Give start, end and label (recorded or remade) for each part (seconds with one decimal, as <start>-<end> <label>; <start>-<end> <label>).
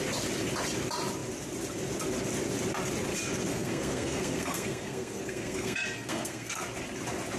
0.0-3.5 recorded; 3.5-6.6 remade; 6.6-7.4 recorded